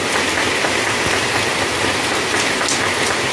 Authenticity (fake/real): real